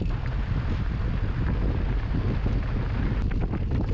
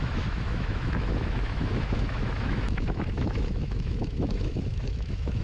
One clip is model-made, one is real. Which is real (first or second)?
first